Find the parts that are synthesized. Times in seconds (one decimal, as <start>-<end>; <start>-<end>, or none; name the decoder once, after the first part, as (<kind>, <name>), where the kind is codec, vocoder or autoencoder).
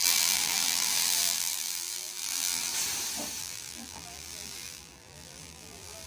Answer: 0.0-2.7 (vocoder, BigVGAN v2); 3.4-6.1